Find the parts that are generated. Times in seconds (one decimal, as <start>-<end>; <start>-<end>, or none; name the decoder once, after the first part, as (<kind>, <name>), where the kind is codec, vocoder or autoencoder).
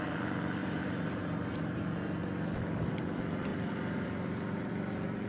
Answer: 0.6-1.8 (vocoder, BigVGAN v2); 3.5-4.7